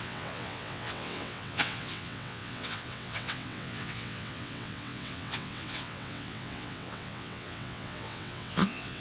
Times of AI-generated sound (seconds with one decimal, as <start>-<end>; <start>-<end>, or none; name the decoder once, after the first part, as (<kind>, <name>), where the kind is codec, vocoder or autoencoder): 0.0-9.0 (vocoder, WaveNeXt)